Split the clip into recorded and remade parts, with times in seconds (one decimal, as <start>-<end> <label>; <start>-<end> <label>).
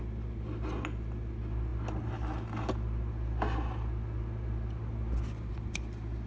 0.0-6.3 recorded